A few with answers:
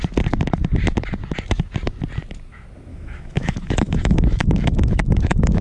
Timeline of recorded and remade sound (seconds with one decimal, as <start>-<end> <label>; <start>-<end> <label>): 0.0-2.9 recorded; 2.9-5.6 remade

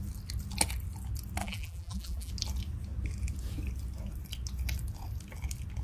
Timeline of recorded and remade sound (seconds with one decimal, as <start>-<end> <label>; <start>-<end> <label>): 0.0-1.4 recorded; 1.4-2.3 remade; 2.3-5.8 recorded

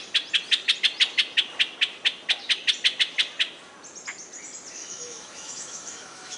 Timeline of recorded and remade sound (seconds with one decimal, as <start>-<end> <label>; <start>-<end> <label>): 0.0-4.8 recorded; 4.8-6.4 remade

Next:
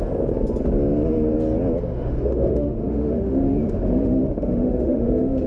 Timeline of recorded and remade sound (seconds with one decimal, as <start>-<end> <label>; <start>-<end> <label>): 0.0-1.9 recorded; 1.9-5.5 remade

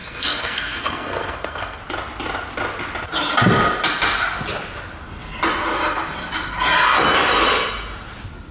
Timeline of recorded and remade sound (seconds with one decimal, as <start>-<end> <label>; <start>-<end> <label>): 0.0-1.8 remade; 1.8-8.5 recorded

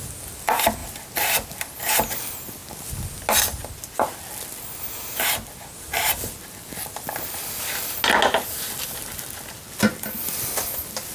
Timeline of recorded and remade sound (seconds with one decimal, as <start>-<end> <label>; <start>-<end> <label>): 0.0-0.8 recorded; 0.8-1.9 remade; 1.9-11.1 recorded